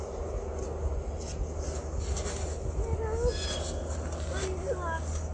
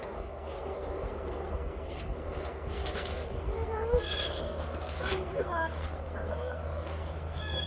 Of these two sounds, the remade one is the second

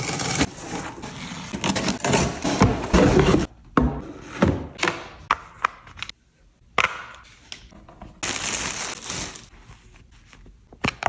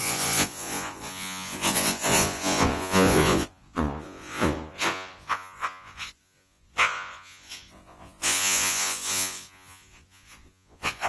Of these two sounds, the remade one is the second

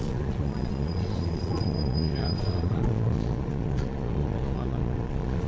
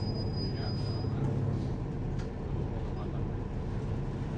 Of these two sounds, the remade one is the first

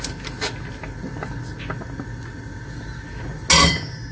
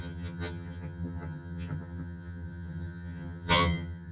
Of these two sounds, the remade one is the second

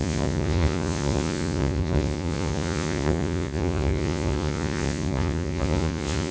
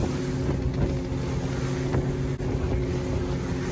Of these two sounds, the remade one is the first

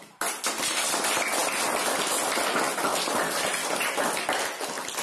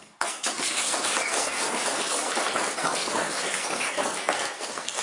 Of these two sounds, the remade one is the second